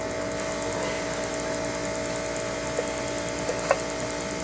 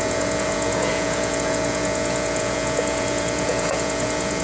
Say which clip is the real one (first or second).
first